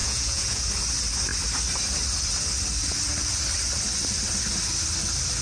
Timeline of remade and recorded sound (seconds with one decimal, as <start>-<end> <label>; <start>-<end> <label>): 0.0-0.6 remade; 0.6-5.4 recorded